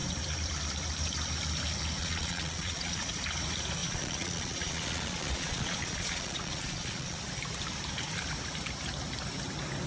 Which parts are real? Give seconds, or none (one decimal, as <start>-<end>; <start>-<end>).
0.0-2.0; 3.1-3.8; 7.2-9.9